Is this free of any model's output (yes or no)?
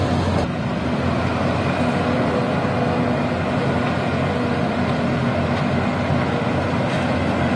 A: yes